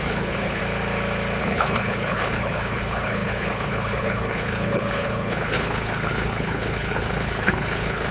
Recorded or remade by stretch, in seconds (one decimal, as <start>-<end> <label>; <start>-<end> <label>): 0.0-0.6 remade; 0.6-1.4 recorded; 1.4-8.1 remade